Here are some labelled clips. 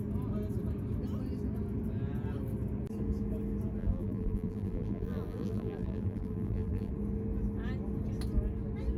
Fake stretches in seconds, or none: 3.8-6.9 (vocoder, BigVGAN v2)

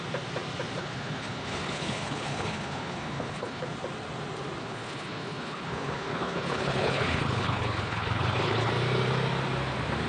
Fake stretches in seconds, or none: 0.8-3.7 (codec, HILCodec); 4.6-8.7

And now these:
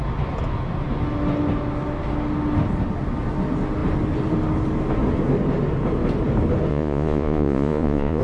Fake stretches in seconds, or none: 6.7-8.2 (vocoder, Vocos)

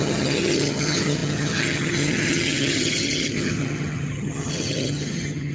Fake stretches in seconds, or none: 0.0-5.5 (vocoder, HiFi-GAN)

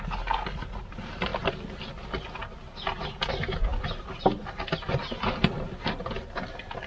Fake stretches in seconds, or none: none

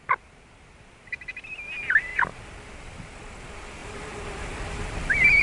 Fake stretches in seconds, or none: 2.1-2.8 (vocoder, BigVGAN v2); 3.8-5.4

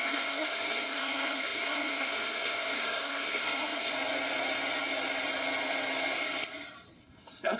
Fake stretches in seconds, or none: 0.0-3.9 (codec, SNAC); 7.0-7.6